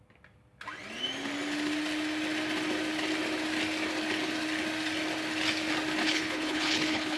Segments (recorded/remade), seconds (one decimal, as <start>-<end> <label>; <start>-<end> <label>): 0.0-6.0 recorded; 6.0-7.2 remade